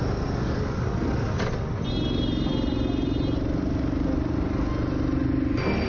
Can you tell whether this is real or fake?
real